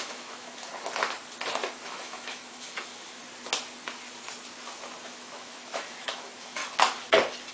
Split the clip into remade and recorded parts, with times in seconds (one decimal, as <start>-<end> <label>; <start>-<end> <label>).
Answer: 0.0-0.7 remade; 0.7-1.8 recorded; 1.8-3.2 remade; 3.2-5.0 recorded; 5.0-6.6 remade; 6.6-7.5 recorded